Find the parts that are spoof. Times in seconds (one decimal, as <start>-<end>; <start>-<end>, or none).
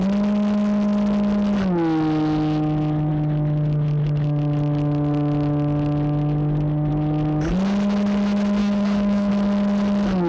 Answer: 8.6-9.3